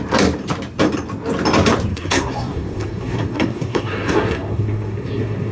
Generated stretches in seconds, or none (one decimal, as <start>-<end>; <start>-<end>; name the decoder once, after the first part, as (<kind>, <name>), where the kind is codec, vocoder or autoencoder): 1.9-5.5 (codec, SNAC)

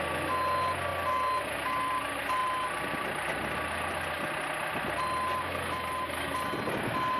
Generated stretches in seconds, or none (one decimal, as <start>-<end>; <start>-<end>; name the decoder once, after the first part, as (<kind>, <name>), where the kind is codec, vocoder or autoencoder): none

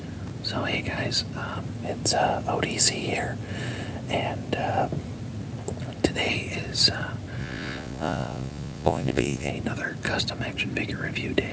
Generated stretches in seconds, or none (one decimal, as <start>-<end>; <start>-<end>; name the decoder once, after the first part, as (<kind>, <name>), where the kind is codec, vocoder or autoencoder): 7.4-9.5 (vocoder, Vocos)

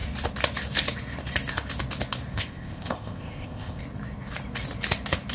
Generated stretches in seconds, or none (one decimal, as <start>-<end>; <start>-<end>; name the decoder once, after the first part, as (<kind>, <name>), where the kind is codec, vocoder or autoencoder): 2.3-3.8 (codec, ZipCodec)

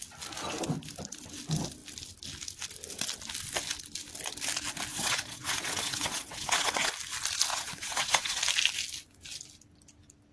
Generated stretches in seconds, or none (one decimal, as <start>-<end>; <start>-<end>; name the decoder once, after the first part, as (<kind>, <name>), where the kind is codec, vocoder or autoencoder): 4.9-6.9 (vocoder, WaveNeXt); 7.5-8.4

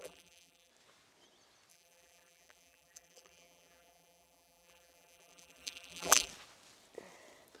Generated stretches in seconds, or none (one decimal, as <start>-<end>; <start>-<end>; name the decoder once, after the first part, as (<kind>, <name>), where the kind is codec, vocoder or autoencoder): 0.0-0.7 (vocoder, BigVGAN v2); 1.7-6.3